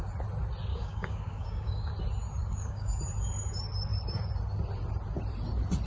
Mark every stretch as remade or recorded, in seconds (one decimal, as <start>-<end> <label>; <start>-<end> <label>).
0.0-0.7 recorded; 0.7-1.9 remade; 1.9-2.4 recorded; 2.4-3.0 remade; 3.0-5.9 recorded